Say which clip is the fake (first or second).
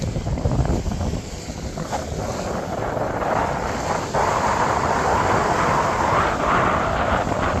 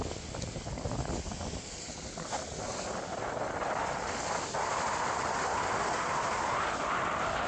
first